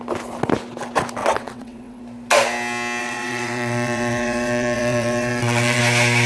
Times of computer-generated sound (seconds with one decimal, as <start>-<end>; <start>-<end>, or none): 1.2-2.0; 3.0-5.8